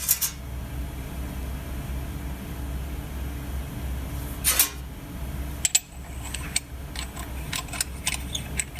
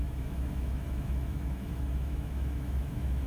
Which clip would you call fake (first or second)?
second